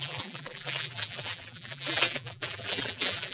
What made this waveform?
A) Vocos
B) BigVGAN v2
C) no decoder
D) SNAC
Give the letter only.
B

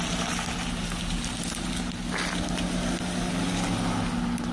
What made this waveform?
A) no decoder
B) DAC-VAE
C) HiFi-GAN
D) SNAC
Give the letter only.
A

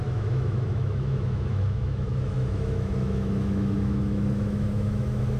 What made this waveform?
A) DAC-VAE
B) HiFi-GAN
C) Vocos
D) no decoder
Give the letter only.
A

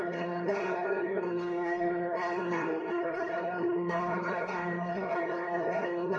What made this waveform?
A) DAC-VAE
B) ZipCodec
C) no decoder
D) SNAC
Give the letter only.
D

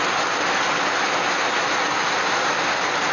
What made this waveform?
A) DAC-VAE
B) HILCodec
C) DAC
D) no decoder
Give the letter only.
D